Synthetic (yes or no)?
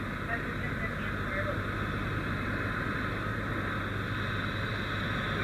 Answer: no